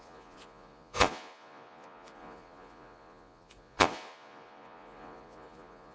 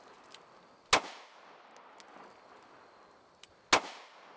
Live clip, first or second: second